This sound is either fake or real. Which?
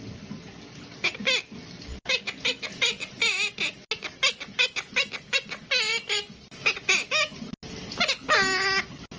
real